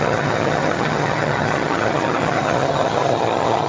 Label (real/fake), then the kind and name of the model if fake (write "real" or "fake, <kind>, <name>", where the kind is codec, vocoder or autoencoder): fake, vocoder, HiFi-GAN